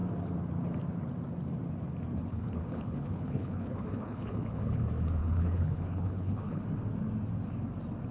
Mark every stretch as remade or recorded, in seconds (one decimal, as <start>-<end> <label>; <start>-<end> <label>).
0.0-2.3 recorded; 2.3-4.8 remade; 4.8-5.2 recorded; 5.2-6.6 remade; 6.6-8.1 recorded